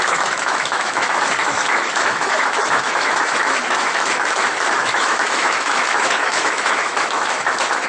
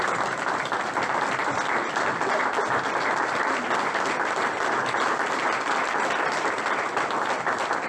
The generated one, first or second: first